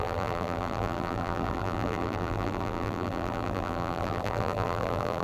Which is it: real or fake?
fake